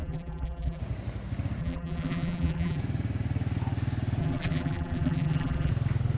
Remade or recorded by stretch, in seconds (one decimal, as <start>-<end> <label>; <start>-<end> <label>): 0.0-0.8 remade; 0.8-1.6 recorded; 1.6-2.8 remade; 2.8-4.2 recorded; 4.2-5.7 remade; 5.7-6.2 recorded